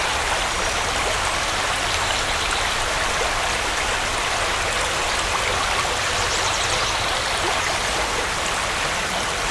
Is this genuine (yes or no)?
yes